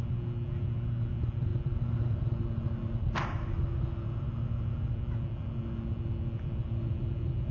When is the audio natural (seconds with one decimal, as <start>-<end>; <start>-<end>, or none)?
0.0-7.5

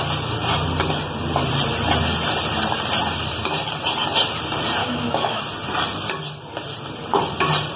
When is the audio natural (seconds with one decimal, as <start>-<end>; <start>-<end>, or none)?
0.0-4.8; 5.4-7.8

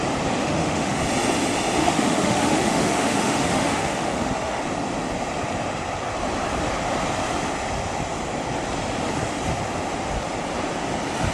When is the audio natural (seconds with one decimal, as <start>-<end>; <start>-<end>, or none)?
0.0-0.4; 1.0-1.8; 4.6-11.3

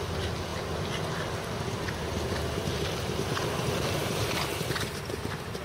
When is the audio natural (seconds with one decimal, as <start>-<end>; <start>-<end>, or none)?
0.0-5.6

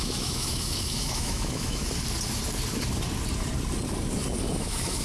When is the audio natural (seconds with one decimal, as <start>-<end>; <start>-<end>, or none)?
1.8-4.6

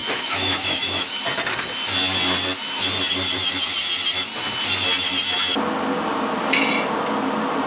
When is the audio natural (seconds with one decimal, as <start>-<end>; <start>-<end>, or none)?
1.2-7.7